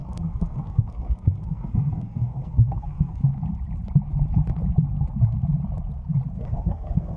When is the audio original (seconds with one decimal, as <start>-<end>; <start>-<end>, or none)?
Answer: 3.2-6.4

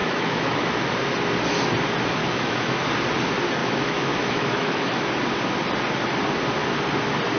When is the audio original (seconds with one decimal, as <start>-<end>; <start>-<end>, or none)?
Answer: 0.9-2.2; 2.9-3.6; 5.1-7.4

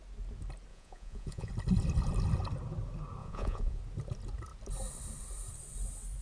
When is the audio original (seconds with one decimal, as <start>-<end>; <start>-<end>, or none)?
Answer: 0.0-0.7; 1.5-3.2; 3.8-6.2

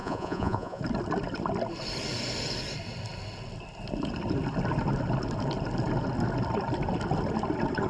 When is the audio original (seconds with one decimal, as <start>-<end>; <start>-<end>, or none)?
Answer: 0.8-7.9

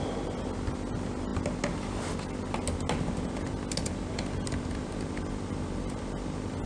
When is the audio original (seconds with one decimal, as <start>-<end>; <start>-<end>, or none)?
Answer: 0.0-6.7

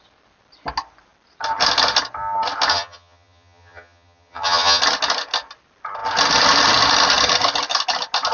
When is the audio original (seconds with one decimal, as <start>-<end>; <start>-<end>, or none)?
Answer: 0.0-2.7; 4.8-8.3

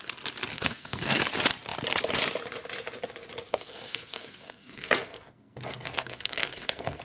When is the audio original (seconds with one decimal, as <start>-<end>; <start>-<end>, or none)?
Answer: 0.0-0.5; 1.2-3.5